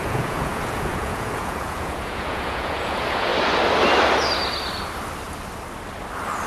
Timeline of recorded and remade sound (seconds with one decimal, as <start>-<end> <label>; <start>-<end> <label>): 0.0-3.3 remade; 3.3-6.5 recorded